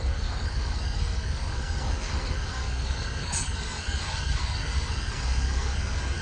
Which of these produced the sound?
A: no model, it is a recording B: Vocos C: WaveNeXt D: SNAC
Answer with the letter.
D